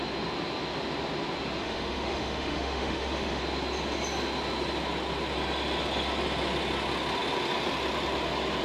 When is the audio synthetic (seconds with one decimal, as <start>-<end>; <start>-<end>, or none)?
1.6-3.4